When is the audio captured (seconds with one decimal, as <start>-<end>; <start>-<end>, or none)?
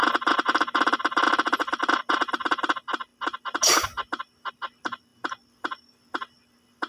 0.0-6.9